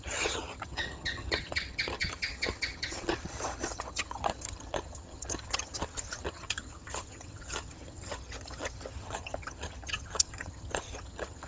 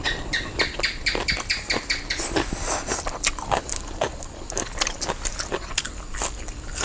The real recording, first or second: second